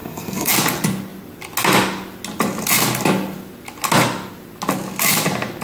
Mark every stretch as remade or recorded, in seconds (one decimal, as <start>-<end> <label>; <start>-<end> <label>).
0.0-0.5 remade; 0.5-5.6 recorded